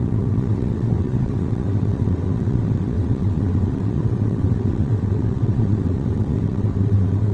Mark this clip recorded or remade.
remade